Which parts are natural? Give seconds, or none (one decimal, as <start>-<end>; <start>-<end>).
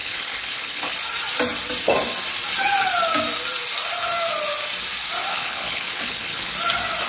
0.9-5.3; 6.5-7.1